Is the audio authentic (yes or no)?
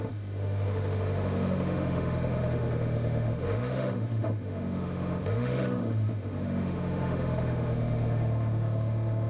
no